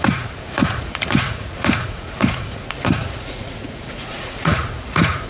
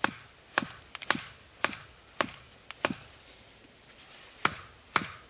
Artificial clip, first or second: first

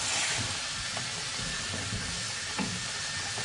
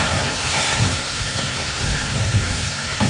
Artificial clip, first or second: second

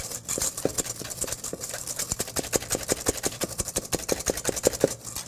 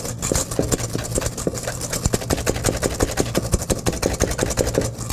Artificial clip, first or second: first